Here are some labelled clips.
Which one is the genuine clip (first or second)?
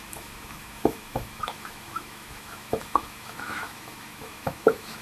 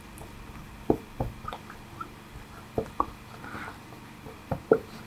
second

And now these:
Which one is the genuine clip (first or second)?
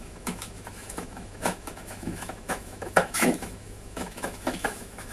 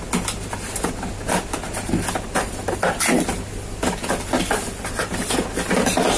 second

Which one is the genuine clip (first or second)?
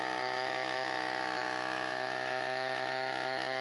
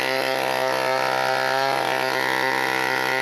second